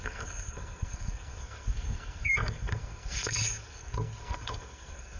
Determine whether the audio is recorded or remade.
remade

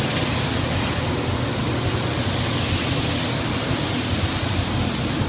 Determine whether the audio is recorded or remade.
recorded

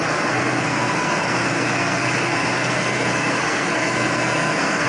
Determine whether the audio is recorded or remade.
remade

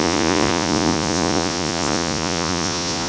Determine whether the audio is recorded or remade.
remade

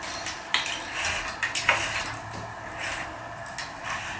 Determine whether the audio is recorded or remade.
recorded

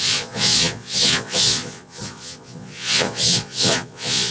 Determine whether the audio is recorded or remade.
remade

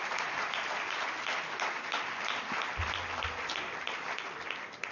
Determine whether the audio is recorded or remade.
remade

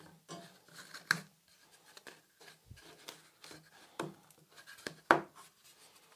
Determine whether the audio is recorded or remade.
recorded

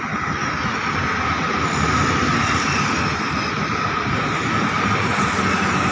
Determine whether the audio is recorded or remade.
recorded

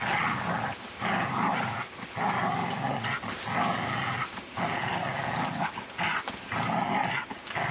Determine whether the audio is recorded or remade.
recorded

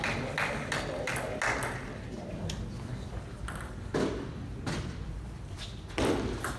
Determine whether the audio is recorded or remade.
recorded